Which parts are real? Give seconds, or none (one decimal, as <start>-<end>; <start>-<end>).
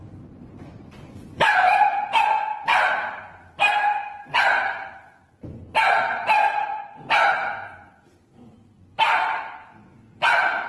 0.0-3.8; 4.9-10.7